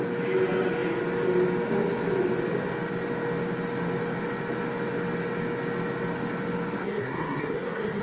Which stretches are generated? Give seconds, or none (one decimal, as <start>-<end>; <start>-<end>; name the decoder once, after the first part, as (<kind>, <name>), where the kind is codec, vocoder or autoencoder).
6.8-8.0 (codec, SNAC)